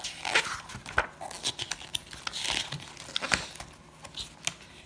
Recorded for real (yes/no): yes